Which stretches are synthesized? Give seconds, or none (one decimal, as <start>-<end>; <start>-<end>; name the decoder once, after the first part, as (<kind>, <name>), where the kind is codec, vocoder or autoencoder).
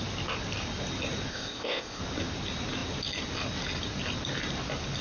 1.3-2.0 (codec, ZipCodec)